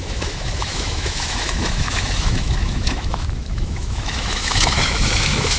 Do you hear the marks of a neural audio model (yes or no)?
yes